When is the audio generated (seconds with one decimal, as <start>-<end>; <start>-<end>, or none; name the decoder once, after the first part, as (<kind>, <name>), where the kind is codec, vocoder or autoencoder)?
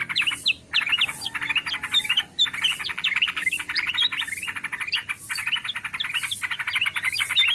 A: 2.7-3.9 (vocoder, BigVGAN v2)